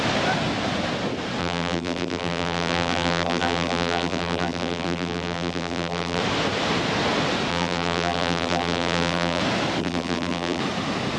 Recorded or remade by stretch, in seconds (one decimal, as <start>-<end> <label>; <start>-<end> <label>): 0.0-1.4 recorded; 1.4-6.2 remade; 6.2-7.5 recorded; 7.5-9.4 remade; 9.4-9.8 recorded; 9.8-10.6 remade; 10.6-11.2 recorded